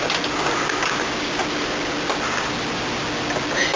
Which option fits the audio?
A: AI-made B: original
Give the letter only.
B